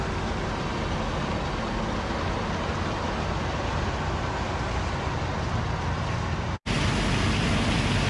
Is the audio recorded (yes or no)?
yes